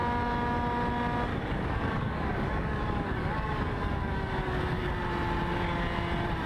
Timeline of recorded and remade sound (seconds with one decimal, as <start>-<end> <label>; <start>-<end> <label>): 0.0-1.3 recorded; 1.3-4.9 remade; 4.9-6.5 recorded